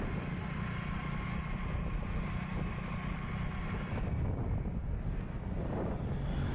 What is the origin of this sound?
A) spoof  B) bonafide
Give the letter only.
B